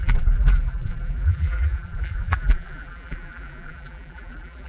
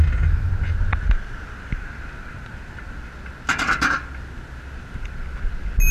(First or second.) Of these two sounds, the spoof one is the first